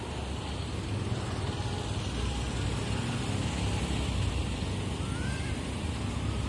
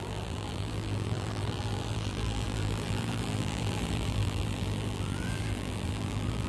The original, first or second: first